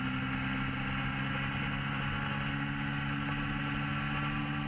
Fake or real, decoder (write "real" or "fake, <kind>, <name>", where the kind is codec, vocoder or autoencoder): real